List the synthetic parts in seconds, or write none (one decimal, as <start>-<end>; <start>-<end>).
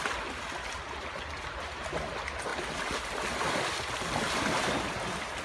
none